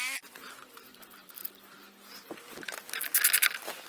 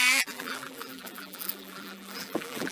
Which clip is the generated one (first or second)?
second